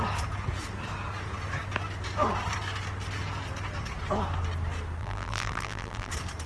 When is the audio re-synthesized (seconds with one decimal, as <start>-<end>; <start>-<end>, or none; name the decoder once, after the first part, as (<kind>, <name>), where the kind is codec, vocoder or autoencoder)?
5.0-6.1 (vocoder, BigVGAN v2)